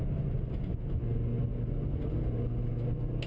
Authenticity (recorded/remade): recorded